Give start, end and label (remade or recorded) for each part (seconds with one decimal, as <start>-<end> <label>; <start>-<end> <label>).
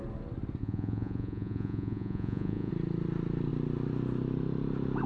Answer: 0.0-0.6 recorded; 0.6-2.7 remade; 2.7-5.1 recorded